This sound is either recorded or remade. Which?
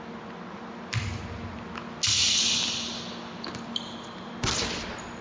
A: recorded